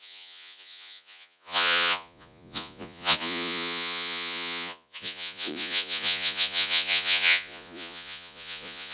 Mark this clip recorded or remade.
remade